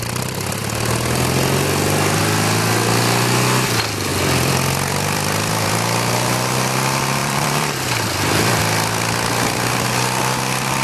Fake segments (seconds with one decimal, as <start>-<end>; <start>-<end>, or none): 4.1-5.7; 7.2-8.6